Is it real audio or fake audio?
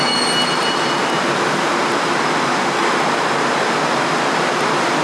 real